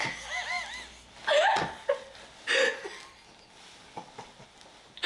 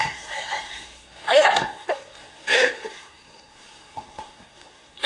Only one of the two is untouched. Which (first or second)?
first